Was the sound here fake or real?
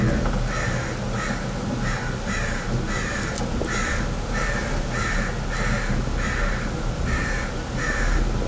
real